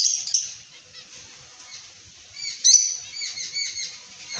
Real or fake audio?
real